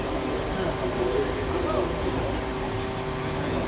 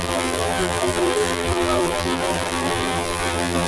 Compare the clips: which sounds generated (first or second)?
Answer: second